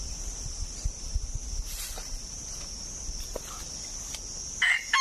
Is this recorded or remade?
recorded